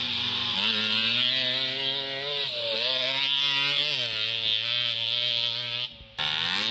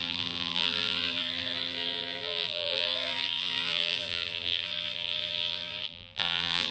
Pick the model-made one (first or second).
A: second